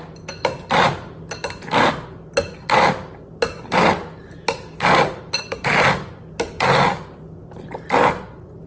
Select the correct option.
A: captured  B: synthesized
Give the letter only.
A